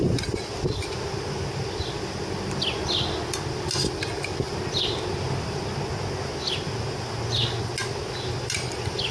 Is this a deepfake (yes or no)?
no